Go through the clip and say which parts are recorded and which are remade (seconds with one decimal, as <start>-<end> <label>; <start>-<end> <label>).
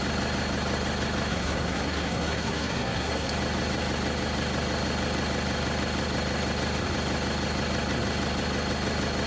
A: 0.0-1.3 recorded; 1.3-3.3 remade; 3.3-9.3 recorded